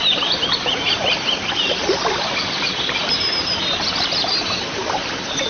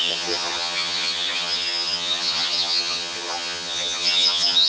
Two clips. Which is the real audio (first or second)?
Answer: first